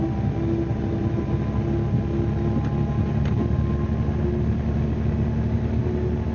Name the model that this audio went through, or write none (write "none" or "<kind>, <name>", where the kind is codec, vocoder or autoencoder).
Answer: none